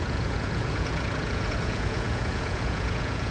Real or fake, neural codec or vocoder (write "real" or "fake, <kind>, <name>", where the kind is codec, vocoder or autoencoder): fake, vocoder, Vocos